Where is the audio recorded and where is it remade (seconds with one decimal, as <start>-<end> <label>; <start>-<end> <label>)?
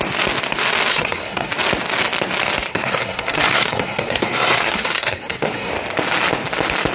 0.0-0.9 recorded; 0.9-1.5 remade; 1.5-2.7 recorded; 2.7-5.7 remade; 5.7-6.9 recorded